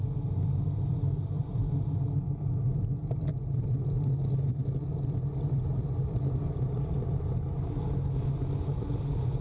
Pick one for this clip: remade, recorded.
recorded